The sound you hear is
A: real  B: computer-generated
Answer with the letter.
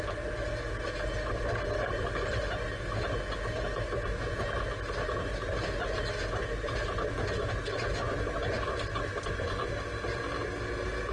A